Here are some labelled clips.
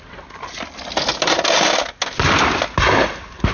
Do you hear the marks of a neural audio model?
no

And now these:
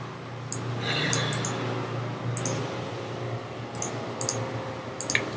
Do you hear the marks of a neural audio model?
no